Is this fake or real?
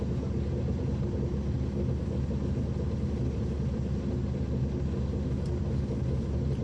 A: real